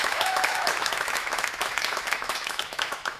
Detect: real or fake fake